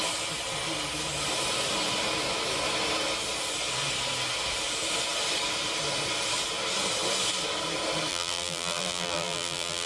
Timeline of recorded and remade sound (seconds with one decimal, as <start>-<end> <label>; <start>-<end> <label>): 0.0-8.1 recorded; 8.1-9.9 remade